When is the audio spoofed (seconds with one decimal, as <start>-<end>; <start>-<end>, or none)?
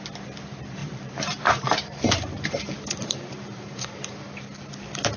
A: 0.8-3.9